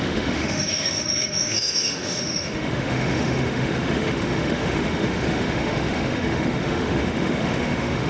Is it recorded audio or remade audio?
remade